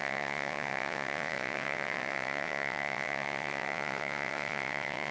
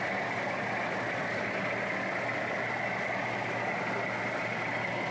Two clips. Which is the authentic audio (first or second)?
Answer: second